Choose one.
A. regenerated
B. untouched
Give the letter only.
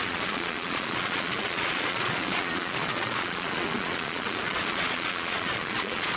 A